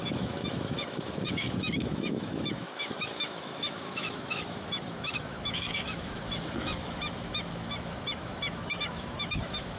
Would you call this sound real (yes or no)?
no